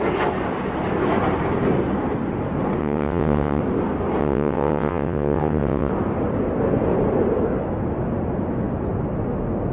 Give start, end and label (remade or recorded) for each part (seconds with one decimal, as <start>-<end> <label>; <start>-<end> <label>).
0.0-2.8 recorded; 2.8-3.6 remade; 3.6-4.2 recorded; 4.2-5.9 remade; 5.9-9.7 recorded